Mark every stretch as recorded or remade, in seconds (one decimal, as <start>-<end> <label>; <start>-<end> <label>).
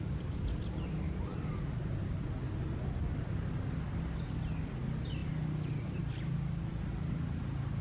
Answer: 0.0-7.8 recorded